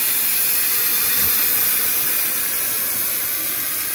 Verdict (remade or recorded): recorded